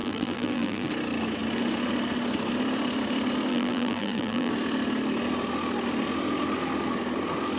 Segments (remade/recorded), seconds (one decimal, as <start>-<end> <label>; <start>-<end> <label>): 0.0-0.9 remade; 0.9-3.5 recorded; 3.5-4.5 remade; 4.5-7.6 recorded